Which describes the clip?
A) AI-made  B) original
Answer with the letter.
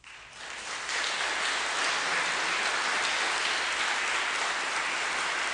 B